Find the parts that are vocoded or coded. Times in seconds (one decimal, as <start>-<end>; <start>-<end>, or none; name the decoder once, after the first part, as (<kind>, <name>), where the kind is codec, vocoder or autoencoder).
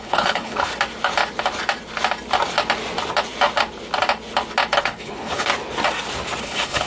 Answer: 0.0-0.7 (codec, HILCodec); 4.8-5.5; 6.4-6.9